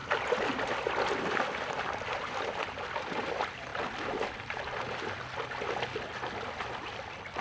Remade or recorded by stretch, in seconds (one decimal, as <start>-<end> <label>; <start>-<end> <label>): 0.0-7.4 recorded